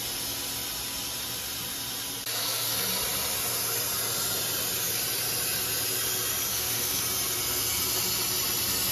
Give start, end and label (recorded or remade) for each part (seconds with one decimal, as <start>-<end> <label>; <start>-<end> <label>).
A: 0.0-2.4 recorded; 2.4-2.9 remade; 2.9-6.5 recorded; 6.5-7.0 remade; 7.0-8.9 recorded